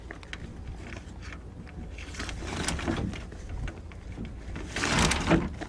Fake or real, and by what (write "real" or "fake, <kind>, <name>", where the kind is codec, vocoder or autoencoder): real